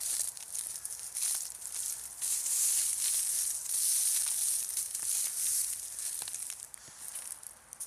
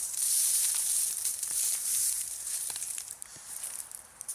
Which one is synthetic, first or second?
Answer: second